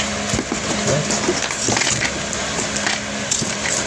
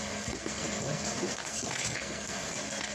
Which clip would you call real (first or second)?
first